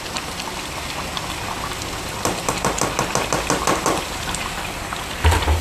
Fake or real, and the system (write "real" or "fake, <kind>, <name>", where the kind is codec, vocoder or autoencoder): real